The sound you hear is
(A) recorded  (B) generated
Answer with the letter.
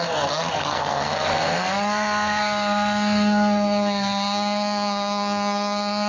B